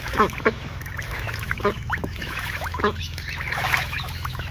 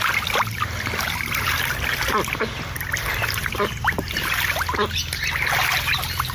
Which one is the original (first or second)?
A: second